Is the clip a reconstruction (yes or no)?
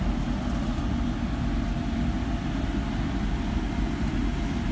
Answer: no